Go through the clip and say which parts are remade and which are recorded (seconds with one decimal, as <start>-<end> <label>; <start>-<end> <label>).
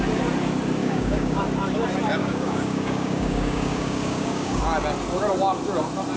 0.0-0.8 recorded; 0.8-1.4 remade; 1.4-2.2 recorded; 2.2-4.6 remade; 4.6-6.2 recorded